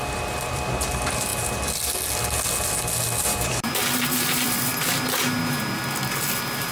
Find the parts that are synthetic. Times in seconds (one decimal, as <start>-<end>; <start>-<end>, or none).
0.0-1.3; 3.2-4.7